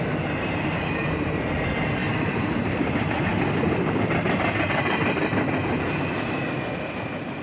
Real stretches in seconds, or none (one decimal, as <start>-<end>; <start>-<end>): 0.0-2.0; 6.4-7.4